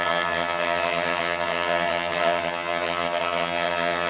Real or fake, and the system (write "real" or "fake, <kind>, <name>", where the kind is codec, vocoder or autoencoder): fake, vocoder, HiFi-GAN